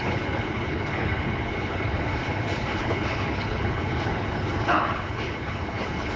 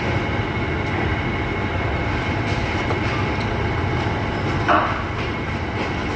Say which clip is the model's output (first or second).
first